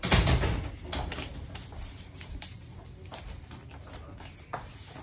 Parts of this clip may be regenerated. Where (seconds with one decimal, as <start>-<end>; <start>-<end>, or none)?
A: none